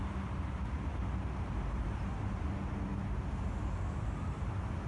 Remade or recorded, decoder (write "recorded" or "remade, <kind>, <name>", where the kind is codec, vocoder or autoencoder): recorded